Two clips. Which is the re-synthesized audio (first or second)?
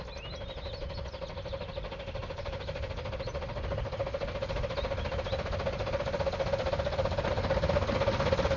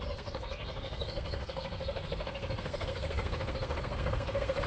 second